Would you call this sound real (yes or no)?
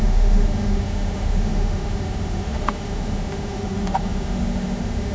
no